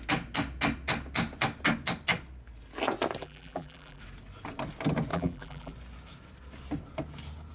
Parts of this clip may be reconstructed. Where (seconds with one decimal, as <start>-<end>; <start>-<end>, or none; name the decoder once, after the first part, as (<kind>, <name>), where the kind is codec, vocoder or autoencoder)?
3.2-4.0 (vocoder, BigVGAN v2); 5.1-5.7